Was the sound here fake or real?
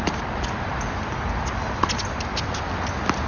real